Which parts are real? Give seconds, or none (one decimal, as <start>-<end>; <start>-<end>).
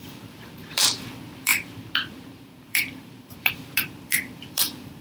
none